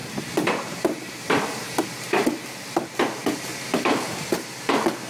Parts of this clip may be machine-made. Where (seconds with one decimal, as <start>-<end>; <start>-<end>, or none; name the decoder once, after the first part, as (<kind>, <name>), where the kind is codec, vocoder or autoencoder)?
0.0-1.8 (vocoder, BigVGAN v2); 3.2-5.1